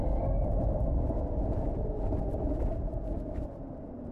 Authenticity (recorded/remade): recorded